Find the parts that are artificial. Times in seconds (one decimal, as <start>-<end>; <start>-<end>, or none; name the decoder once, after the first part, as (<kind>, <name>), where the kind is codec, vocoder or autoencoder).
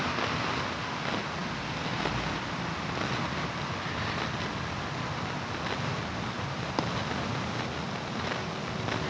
none